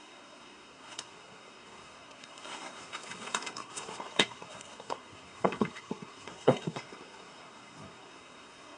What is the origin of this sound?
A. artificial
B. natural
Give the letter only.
A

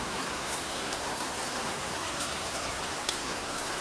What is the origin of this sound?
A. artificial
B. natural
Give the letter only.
A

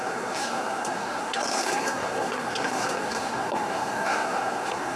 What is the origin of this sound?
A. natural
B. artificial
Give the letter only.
B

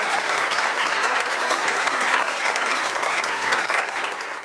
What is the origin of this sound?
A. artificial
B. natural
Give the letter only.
A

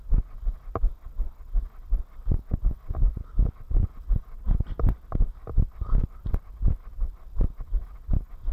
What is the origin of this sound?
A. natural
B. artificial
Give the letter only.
A